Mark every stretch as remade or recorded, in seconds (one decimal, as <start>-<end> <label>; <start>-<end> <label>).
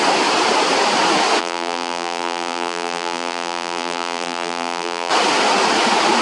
0.0-1.4 recorded; 1.4-5.1 remade; 5.1-6.2 recorded